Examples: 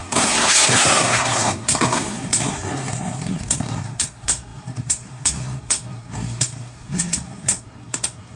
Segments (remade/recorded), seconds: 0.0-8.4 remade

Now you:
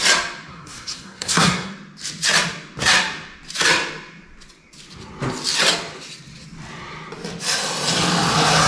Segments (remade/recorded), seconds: 0.0-0.5 recorded; 0.5-1.7 remade; 1.7-8.7 recorded

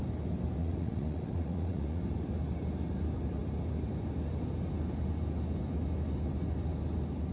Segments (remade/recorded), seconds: 0.0-0.6 recorded; 0.6-2.0 remade; 2.0-7.3 recorded

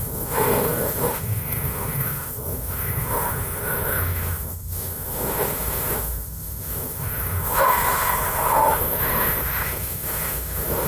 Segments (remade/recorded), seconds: 0.0-10.9 remade

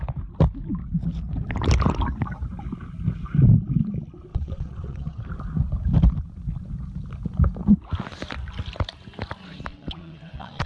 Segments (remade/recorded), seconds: 0.0-4.3 recorded; 4.3-5.2 remade; 5.2-9.7 recorded; 9.7-10.7 remade

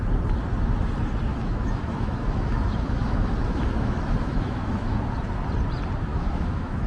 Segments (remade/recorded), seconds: 0.0-1.3 recorded; 1.3-5.0 remade; 5.0-6.1 recorded; 6.1-6.9 remade

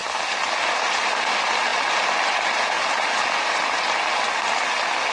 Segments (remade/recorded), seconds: 0.0-5.1 recorded

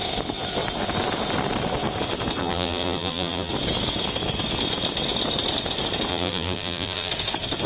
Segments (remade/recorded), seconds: 0.0-2.4 recorded; 2.4-3.5 remade; 3.5-6.1 recorded; 6.1-7.1 remade; 7.1-7.7 recorded